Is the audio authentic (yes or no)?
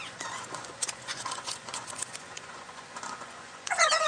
no